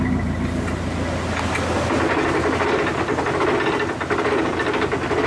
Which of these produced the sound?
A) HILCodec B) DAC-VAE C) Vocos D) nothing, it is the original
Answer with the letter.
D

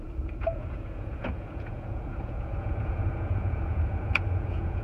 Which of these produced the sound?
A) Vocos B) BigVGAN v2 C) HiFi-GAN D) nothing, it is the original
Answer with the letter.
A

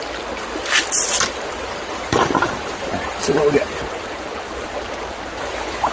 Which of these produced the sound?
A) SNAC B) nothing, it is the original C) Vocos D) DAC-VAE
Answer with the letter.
B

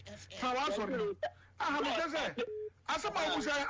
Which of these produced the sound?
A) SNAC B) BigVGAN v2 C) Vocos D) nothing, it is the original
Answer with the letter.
D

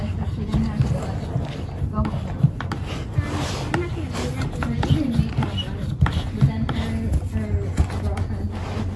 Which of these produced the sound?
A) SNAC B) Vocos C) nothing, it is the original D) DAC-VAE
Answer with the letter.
C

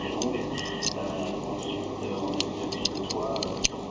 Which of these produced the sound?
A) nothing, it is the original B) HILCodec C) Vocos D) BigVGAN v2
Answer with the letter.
A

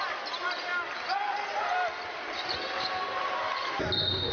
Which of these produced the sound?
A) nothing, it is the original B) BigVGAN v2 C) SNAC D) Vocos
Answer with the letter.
A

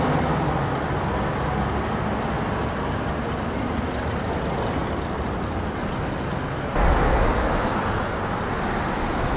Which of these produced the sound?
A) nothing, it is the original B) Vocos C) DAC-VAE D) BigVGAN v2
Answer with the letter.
A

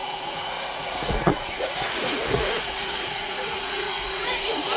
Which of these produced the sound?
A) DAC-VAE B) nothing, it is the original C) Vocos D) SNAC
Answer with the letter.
C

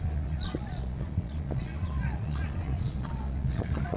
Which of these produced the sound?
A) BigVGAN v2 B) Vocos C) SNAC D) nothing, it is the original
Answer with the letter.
B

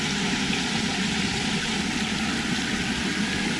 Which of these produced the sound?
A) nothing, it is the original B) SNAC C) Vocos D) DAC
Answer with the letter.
A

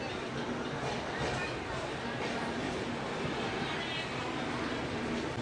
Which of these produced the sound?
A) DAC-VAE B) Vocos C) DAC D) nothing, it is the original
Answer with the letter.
D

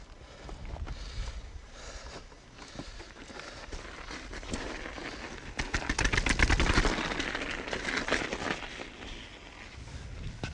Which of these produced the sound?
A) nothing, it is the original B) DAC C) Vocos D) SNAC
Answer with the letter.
A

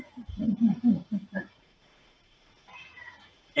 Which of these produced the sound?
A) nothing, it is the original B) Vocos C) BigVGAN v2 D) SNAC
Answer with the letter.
B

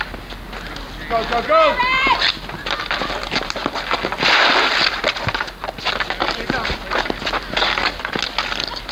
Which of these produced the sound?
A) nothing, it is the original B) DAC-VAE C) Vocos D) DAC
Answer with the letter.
A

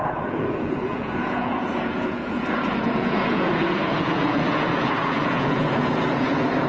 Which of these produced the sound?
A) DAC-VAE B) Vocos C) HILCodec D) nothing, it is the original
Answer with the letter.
B